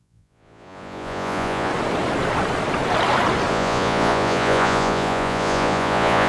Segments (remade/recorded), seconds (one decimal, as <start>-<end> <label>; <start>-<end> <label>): 0.0-1.7 remade; 1.7-3.5 recorded; 3.5-6.3 remade